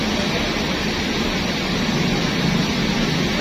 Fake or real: real